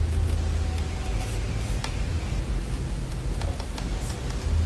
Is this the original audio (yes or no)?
yes